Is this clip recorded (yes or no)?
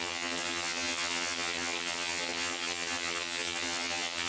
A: no